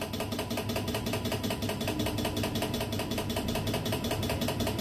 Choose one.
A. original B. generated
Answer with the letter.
A